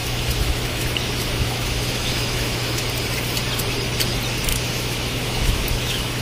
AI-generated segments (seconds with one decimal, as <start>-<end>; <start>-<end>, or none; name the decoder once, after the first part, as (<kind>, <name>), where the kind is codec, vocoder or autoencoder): 0.0-2.8 (autoencoder, DAC-VAE); 4.5-6.2